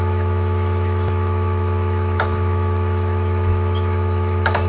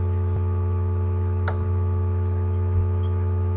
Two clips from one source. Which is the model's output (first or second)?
first